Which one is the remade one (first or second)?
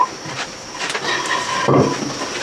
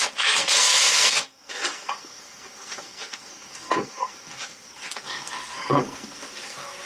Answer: second